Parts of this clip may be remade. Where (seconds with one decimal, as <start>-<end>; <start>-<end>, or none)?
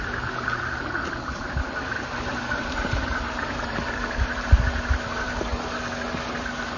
0.0-5.5